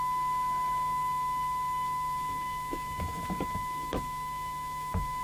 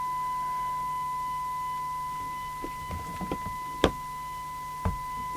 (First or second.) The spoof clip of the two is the first